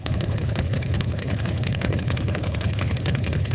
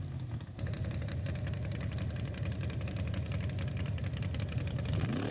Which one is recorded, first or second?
second